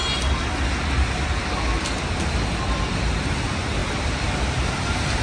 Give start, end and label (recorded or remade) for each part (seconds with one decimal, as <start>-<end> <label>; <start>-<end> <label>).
0.0-5.2 recorded